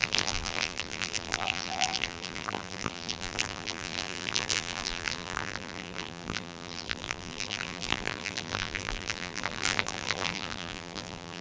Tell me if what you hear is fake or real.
fake